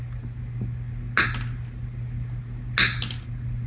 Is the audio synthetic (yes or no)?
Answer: no